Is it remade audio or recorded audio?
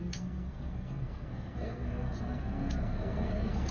remade